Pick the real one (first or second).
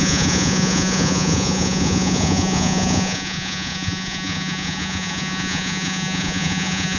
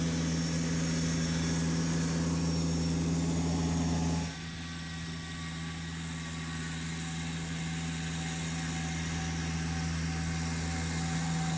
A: second